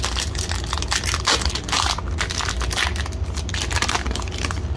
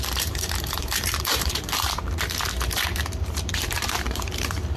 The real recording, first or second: first